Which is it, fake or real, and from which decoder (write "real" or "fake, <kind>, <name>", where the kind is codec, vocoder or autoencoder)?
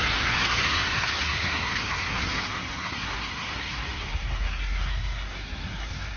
fake, codec, SNAC